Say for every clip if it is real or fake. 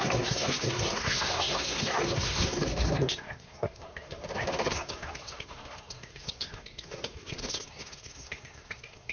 fake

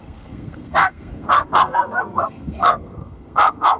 fake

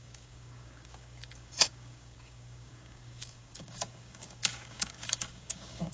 fake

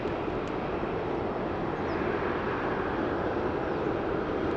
real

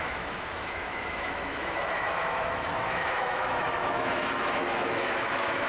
fake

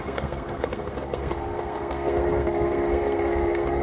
fake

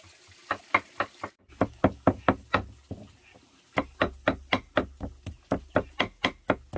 real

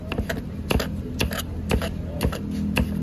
real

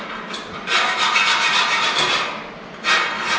real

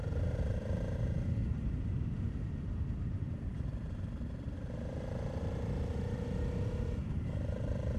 fake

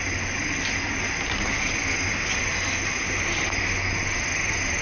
real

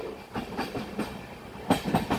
real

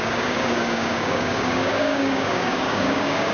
fake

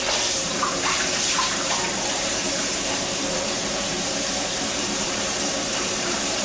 fake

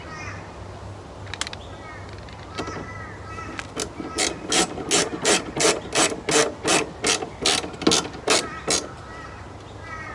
real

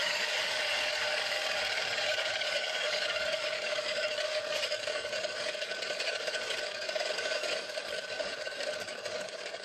fake